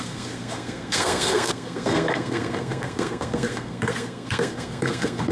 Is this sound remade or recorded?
remade